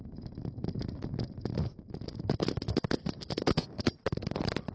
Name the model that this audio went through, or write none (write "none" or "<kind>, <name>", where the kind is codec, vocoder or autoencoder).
none